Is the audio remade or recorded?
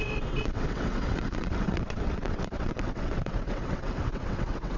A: remade